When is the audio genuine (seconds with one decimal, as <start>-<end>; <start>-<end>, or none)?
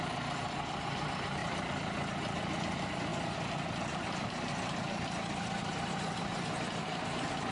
1.4-2.7; 3.1-3.8